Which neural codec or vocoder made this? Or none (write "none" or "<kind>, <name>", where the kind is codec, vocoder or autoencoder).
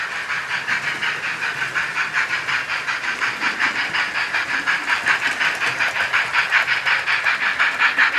none